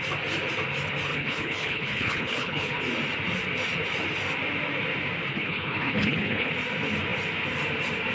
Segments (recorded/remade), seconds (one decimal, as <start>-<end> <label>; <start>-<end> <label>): 0.0-1.1 recorded; 1.1-2.8 remade; 2.8-5.3 recorded; 5.3-6.5 remade; 6.5-8.1 recorded